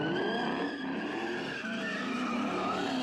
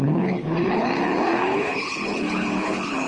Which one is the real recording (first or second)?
first